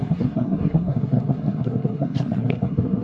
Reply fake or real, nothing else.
fake